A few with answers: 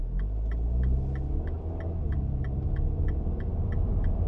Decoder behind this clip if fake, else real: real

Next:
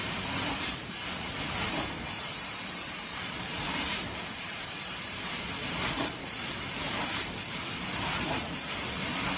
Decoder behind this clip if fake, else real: fake, vocoder, BigVGAN v2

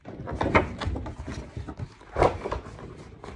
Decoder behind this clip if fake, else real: real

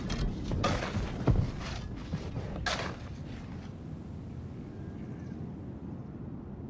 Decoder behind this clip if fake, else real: real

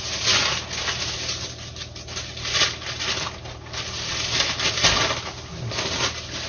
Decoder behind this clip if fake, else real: real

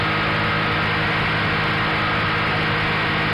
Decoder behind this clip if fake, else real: real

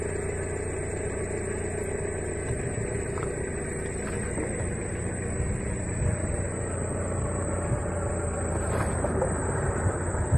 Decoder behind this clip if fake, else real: real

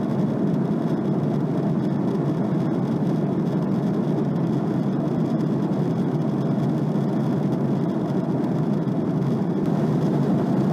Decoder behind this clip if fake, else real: real